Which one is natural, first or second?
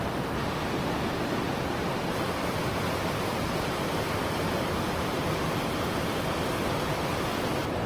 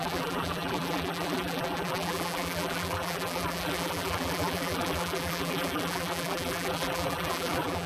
first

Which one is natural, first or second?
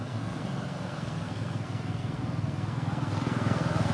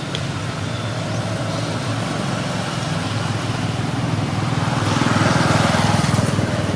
second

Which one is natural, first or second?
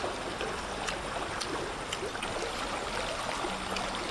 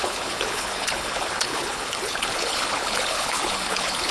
first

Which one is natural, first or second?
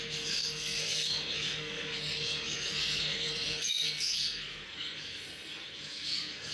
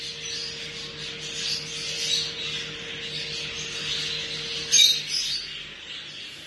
second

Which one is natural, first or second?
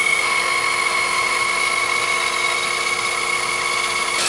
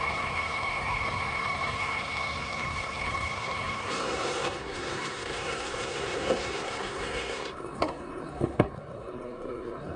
first